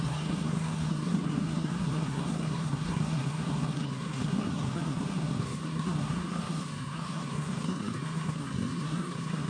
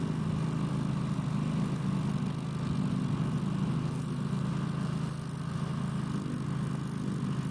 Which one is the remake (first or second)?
first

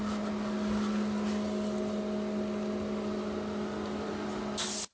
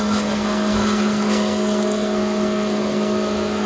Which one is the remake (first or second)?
second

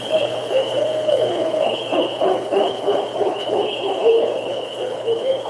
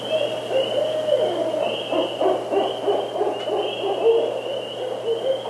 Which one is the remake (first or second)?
first